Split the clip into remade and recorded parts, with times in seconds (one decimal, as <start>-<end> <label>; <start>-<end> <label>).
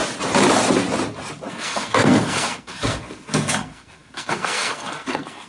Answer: 0.0-1.5 recorded; 1.5-5.5 remade